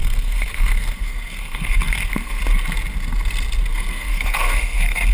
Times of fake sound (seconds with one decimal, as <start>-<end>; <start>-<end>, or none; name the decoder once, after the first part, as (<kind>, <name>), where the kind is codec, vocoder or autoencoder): 0.0-2.4 (codec, SNAC); 3.7-5.1